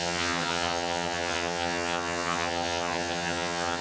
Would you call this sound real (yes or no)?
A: no